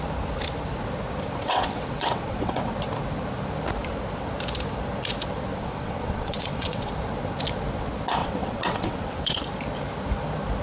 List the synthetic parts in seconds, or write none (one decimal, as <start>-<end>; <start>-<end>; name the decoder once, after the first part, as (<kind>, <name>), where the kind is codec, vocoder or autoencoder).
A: 1.4-2.6 (vocoder, WaveNeXt); 5.5-6.9; 8.2-9.4

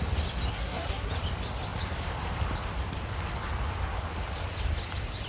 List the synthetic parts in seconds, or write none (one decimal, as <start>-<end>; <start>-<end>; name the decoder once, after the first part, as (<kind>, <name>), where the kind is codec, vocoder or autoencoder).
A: 0.5-1.1 (codec, SNAC)

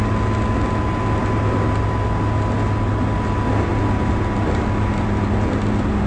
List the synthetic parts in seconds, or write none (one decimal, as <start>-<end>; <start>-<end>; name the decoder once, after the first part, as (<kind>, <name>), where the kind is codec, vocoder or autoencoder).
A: none

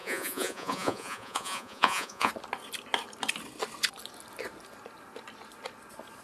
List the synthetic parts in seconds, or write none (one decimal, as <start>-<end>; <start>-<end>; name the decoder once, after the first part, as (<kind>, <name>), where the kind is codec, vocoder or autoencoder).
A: 0.0-2.3 (vocoder, Vocos)

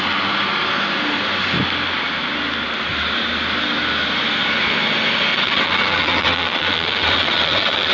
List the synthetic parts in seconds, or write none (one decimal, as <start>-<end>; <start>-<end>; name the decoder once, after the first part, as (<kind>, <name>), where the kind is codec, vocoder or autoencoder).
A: 5.3-7.9 (vocoder, WaveNeXt)

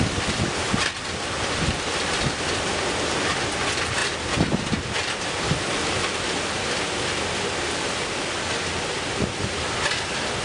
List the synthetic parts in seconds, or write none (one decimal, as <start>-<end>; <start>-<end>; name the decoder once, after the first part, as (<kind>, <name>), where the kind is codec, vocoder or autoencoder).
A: none

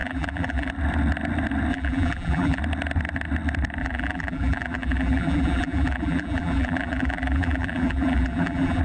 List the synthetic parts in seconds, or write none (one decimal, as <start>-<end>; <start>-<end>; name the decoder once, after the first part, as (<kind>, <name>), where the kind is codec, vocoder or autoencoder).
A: 0.0-0.7 (vocoder, BigVGAN v2); 1.7-2.6; 3.8-8.8